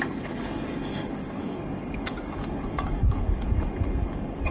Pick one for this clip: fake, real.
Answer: fake